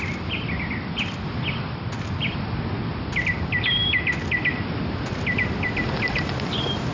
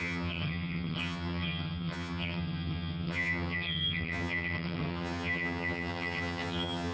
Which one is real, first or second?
first